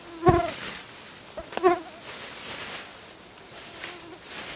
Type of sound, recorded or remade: recorded